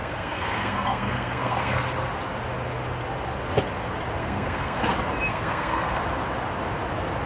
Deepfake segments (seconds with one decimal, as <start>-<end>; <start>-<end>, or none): 0.0-1.8; 4.2-4.8; 5.3-6.0